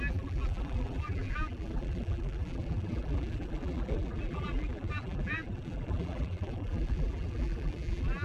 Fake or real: fake